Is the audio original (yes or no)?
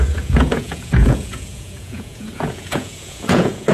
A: no